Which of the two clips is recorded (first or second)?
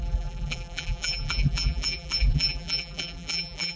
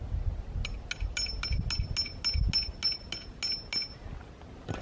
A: second